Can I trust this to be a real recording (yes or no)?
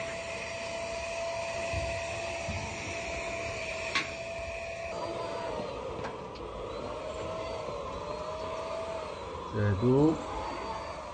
yes